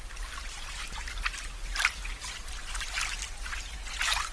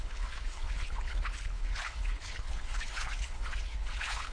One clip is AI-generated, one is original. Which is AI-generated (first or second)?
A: second